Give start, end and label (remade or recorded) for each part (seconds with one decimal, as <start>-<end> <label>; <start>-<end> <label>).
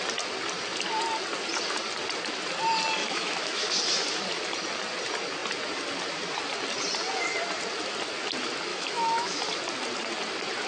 0.0-3.0 recorded; 3.0-3.7 remade; 3.7-8.7 recorded; 8.7-9.4 remade; 9.4-10.7 recorded